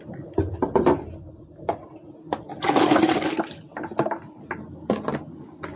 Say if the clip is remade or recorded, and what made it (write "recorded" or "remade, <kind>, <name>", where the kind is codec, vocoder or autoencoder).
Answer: recorded